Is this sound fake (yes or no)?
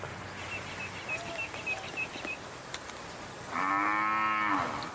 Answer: no